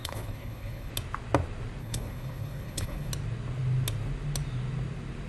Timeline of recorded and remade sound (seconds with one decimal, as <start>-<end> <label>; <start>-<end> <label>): 0.0-0.9 remade; 0.9-1.8 recorded; 1.8-3.1 remade; 3.1-5.3 recorded